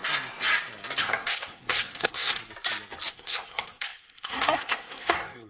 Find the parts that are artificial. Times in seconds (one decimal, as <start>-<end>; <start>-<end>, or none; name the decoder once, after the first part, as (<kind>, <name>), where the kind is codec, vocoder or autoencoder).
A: 1.0-2.4 (codec, SNAC); 3.1-5.5